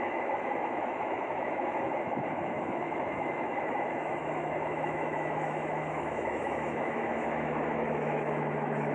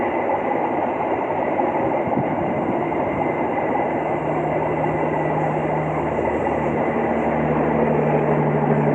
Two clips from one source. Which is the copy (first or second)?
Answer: first